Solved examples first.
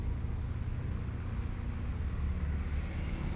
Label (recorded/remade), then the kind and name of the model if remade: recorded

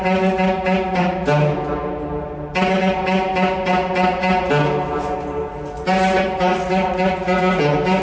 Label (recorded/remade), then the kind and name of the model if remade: recorded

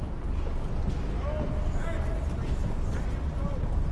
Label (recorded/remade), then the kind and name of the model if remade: recorded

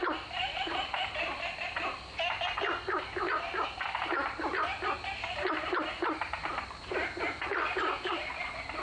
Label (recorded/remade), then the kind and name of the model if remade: recorded